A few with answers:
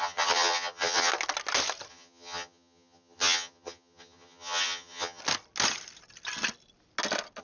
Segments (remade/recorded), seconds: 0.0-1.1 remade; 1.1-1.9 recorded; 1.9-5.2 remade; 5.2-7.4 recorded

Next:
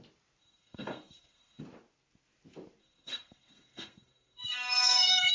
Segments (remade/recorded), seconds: 0.0-0.4 recorded; 0.4-1.6 remade; 1.6-2.8 recorded; 2.8-5.3 remade

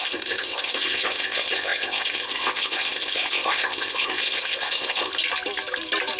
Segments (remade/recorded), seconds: 0.0-5.1 remade; 5.1-6.2 recorded

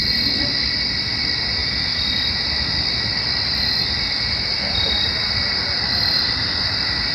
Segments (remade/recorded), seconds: 0.0-7.1 recorded

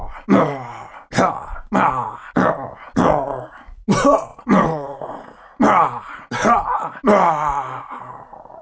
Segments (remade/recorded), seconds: 0.0-4.3 recorded; 4.3-5.6 remade; 5.6-8.6 recorded

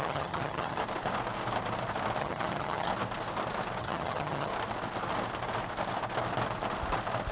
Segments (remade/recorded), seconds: 0.0-0.8 remade; 0.8-2.2 recorded; 2.2-2.9 remade; 2.9-3.8 recorded; 3.8-4.5 remade; 4.5-7.3 recorded